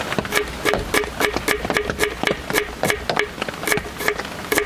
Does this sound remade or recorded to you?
recorded